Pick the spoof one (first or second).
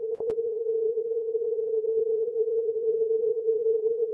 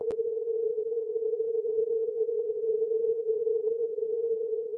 first